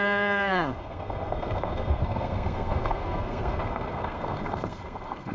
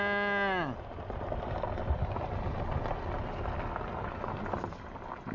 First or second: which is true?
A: second